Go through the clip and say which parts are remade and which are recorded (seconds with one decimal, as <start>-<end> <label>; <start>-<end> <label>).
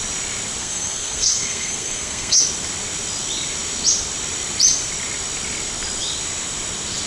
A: 0.0-0.6 recorded; 0.6-2.4 remade; 2.4-7.1 recorded